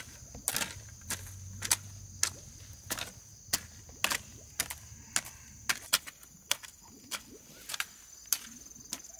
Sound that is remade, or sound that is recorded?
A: recorded